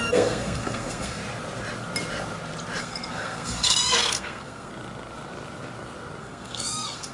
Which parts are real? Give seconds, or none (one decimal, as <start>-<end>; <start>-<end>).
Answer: 1.2-2.8; 4.7-6.2